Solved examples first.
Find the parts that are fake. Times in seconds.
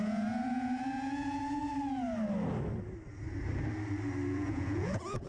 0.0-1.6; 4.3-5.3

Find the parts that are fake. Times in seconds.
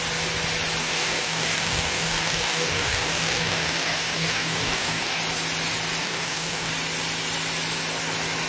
0.8-5.2; 6.0-6.7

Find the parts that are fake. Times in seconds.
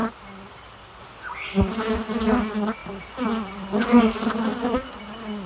2.8-3.8; 4.5-5.0